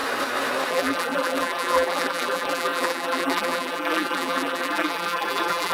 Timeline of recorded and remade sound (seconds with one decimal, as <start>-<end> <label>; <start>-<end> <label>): 0.0-0.7 recorded; 0.7-5.7 remade